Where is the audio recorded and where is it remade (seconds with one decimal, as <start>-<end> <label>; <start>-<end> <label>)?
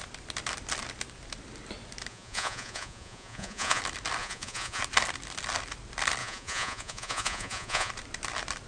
0.0-2.1 recorded; 2.1-3.8 remade; 3.8-4.2 recorded; 4.2-4.8 remade; 4.8-6.2 recorded; 6.2-7.9 remade; 7.9-8.7 recorded